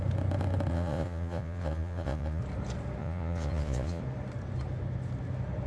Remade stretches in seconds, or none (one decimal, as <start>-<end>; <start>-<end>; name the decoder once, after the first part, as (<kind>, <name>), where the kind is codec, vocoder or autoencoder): 0.7-2.4 (vocoder, Vocos); 3.0-4.0